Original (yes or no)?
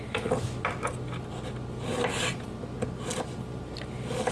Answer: yes